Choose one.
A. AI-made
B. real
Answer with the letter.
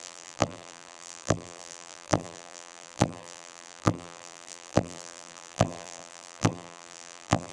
A